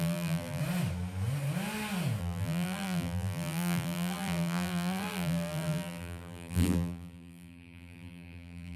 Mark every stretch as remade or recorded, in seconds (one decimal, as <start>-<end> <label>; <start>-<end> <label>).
0.0-0.6 remade; 0.6-2.2 recorded; 2.2-8.8 remade

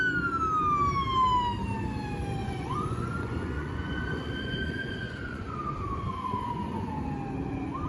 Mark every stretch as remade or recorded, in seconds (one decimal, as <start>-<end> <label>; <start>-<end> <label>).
0.0-2.4 recorded; 2.4-7.1 remade; 7.1-7.9 recorded